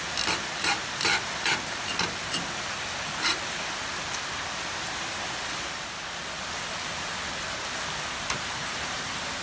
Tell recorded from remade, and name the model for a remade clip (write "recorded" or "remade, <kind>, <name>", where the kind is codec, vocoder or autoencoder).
recorded